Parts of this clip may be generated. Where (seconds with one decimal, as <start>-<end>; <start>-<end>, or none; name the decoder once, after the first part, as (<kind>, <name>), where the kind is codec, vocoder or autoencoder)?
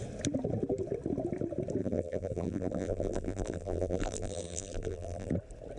1.8-5.3 (vocoder, BigVGAN v2)